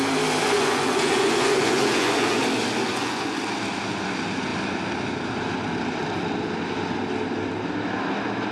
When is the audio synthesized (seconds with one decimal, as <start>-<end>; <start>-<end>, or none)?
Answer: 0.4-2.4; 2.9-3.4